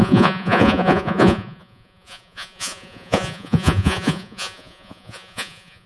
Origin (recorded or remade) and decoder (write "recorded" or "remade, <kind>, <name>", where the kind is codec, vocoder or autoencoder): remade, vocoder, Vocos